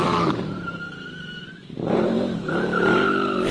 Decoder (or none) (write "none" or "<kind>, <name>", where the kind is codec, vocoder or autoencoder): vocoder, BigVGAN v2